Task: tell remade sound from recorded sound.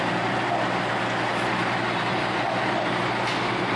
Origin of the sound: recorded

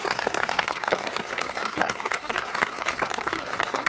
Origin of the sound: remade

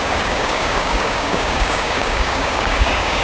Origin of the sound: remade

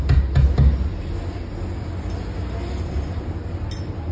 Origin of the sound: recorded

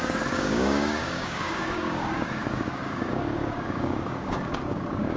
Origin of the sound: remade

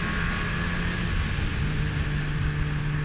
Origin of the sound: recorded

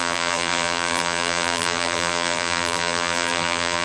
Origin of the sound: remade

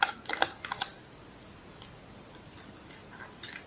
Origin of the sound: recorded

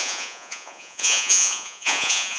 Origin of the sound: remade